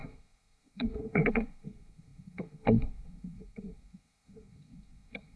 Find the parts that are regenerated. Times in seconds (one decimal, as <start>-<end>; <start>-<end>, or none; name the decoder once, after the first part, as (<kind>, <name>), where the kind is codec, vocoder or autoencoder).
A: 0.0-5.4 (codec, SNAC)

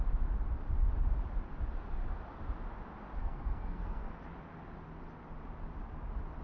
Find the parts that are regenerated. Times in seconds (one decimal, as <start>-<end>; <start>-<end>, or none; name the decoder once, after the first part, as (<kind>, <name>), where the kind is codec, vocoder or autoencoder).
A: 3.2-4.2 (codec, SNAC)

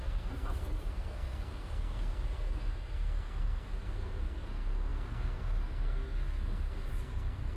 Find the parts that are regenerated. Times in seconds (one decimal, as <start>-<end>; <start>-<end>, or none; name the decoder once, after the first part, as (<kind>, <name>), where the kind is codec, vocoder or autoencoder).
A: 0.0-7.6 (codec, SNAC)

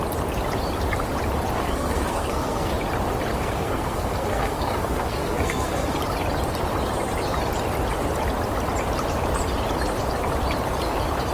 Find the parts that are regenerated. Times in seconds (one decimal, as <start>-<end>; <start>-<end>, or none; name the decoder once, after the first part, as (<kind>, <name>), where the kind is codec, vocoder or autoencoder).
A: 1.6-2.7 (codec, SNAC); 3.3-6.0